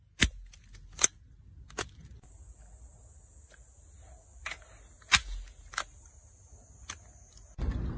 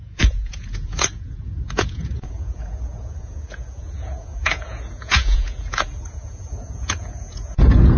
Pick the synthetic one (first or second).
second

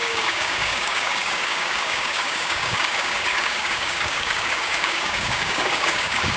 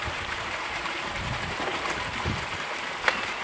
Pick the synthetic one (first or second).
first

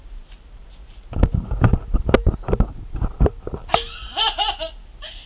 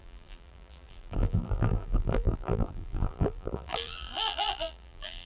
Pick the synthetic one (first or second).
second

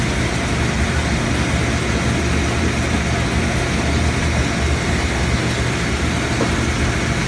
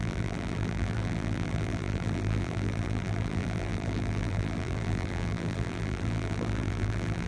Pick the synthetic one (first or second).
second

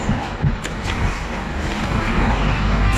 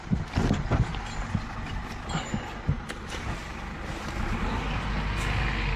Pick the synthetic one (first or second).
first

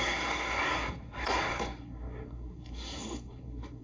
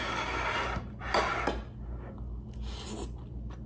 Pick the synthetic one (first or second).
first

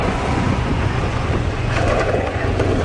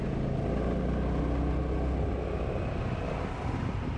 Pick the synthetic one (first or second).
first